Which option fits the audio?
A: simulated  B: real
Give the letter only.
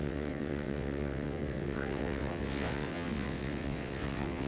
A